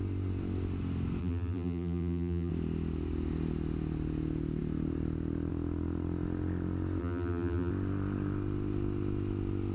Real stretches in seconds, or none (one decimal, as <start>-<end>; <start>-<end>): 0.0-1.2; 2.5-7.0; 7.7-9.7